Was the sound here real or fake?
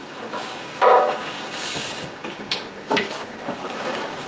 fake